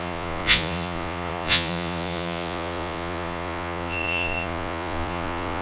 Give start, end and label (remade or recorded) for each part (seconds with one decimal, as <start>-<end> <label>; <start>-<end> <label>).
0.0-5.6 remade